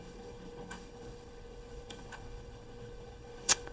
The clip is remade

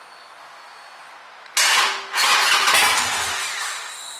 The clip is recorded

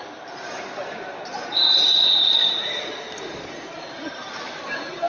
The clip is remade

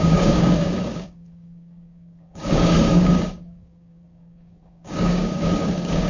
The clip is remade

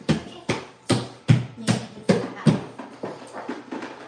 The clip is remade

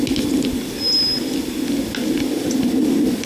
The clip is recorded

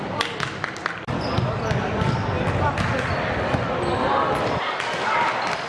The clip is recorded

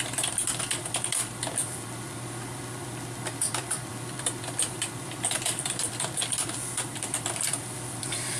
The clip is remade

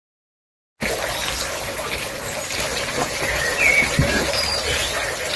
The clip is recorded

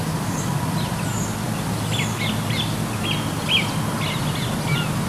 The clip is recorded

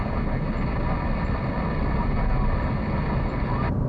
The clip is recorded